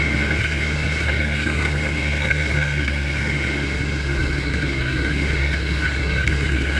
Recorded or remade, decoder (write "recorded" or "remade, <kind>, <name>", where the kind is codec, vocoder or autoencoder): remade, codec, SNAC